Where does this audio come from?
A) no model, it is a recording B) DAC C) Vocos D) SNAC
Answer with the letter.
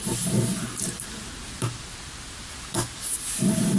A